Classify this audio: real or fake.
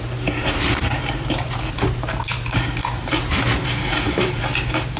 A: fake